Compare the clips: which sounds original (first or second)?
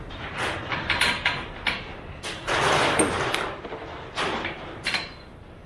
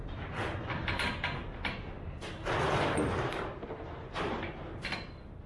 second